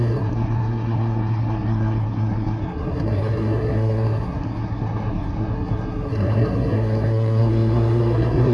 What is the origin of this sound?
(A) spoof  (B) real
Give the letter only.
A